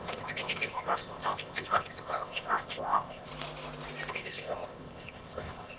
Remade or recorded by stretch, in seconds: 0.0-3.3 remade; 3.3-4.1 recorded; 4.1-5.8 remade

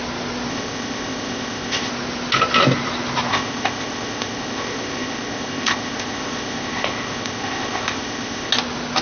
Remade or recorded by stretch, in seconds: 0.0-0.5 recorded; 0.5-1.9 remade; 1.9-3.3 recorded; 3.3-8.5 remade; 8.5-9.0 recorded